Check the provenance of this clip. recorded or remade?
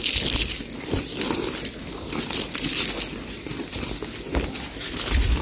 recorded